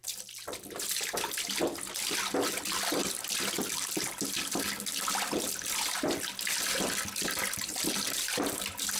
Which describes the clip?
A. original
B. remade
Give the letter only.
A